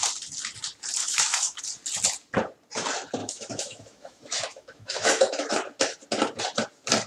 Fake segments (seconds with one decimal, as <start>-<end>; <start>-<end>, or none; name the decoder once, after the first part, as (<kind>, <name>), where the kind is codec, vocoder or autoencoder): 1.0-1.6 (autoencoder, DAC-VAE); 3.2-5.5